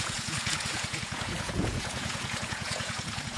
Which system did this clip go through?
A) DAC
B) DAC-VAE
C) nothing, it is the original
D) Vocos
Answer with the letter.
D